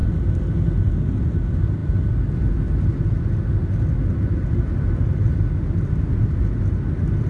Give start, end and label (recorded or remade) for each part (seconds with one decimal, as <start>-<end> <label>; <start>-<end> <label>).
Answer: 0.0-7.3 recorded